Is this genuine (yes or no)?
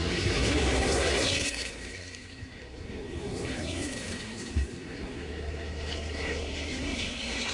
no